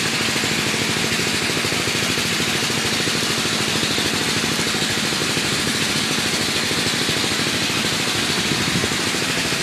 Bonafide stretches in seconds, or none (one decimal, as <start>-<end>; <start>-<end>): 0.0-5.2; 5.9-8.8